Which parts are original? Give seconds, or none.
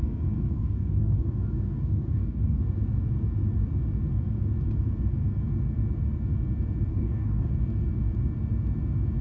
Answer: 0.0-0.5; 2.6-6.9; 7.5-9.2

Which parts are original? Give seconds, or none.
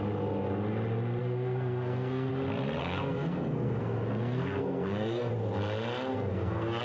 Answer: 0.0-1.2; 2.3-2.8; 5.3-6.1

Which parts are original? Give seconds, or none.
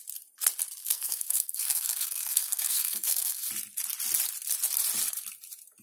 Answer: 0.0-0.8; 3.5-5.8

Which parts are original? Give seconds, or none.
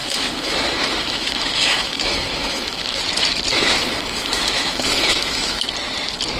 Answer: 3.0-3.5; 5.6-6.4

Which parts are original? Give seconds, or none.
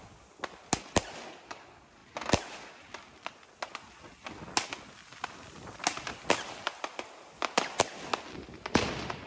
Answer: 0.0-9.3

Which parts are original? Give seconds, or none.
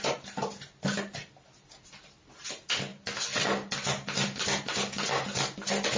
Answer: 0.0-6.0